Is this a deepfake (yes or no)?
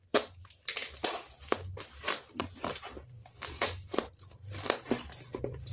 yes